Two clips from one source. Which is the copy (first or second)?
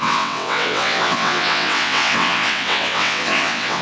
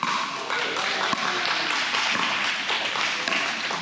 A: first